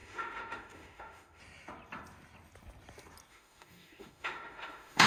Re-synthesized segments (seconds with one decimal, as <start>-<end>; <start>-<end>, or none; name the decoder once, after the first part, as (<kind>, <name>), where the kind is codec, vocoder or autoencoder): 0.0-1.4 (autoencoder, DAC-VAE); 3.3-5.1